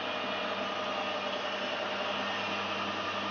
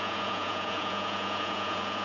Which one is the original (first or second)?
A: first